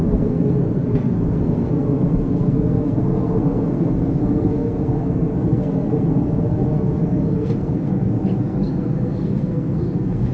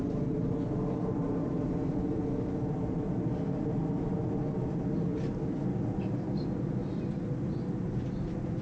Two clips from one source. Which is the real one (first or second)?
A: second